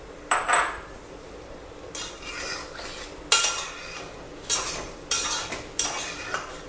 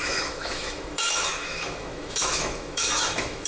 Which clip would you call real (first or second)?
first